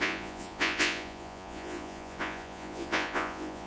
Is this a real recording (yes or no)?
no